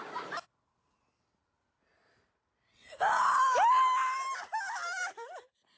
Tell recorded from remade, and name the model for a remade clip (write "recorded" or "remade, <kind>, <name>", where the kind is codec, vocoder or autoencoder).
remade, vocoder, BigVGAN v2